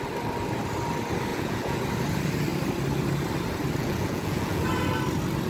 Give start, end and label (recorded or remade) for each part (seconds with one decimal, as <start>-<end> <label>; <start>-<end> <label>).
0.0-1.3 recorded; 1.3-1.8 remade; 1.8-3.8 recorded; 3.8-4.6 remade; 4.6-5.5 recorded